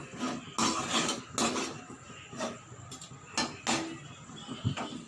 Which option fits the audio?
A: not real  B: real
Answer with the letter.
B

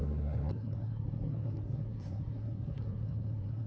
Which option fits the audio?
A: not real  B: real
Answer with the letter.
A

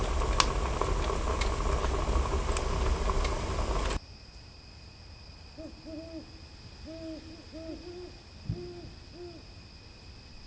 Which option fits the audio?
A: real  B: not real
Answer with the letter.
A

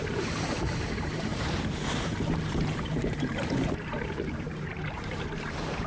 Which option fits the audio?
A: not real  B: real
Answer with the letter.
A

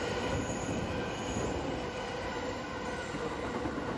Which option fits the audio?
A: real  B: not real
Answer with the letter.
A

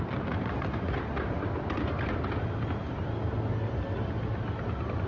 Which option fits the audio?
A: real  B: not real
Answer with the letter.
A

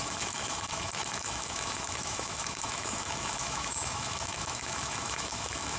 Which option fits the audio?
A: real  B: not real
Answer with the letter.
B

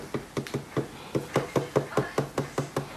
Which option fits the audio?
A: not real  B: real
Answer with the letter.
B